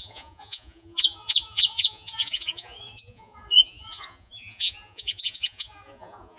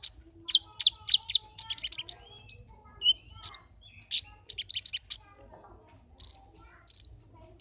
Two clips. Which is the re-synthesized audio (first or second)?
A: first